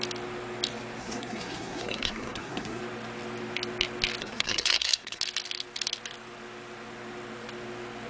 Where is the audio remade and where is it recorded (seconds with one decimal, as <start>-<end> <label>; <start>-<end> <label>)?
0.0-1.0 recorded; 1.0-2.8 remade; 2.8-4.2 recorded; 4.2-5.2 remade; 5.2-8.1 recorded